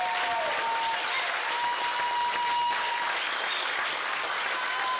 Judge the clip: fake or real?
real